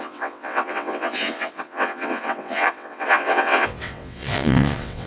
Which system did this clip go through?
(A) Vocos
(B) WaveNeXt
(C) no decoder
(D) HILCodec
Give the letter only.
B